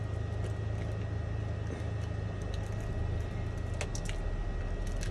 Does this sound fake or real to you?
real